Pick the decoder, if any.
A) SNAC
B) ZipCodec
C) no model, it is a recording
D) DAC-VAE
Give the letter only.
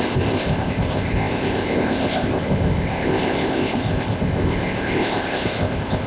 B